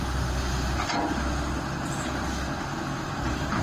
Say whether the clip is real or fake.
real